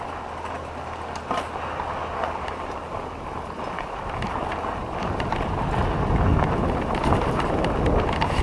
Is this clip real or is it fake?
real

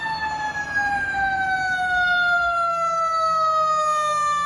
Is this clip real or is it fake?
real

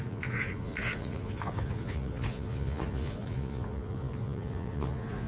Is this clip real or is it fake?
fake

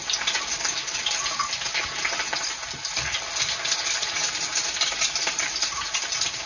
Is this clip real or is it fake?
real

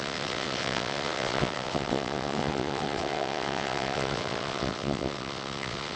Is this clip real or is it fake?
fake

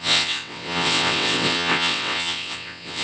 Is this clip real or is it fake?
fake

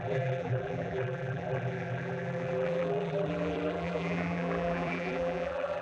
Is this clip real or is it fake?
fake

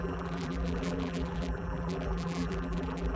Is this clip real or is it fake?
fake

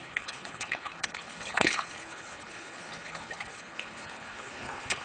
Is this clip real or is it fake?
fake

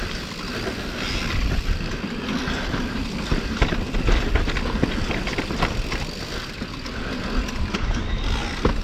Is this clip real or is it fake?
real